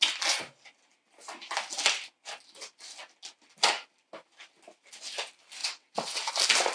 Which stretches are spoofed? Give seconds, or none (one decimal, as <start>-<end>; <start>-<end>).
5.6-6.3